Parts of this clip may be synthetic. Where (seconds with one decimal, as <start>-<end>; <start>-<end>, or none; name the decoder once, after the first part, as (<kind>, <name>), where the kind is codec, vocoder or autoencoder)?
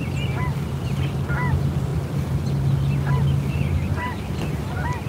none